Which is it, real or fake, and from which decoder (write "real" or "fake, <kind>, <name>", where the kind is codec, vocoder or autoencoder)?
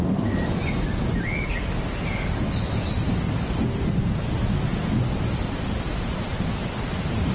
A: real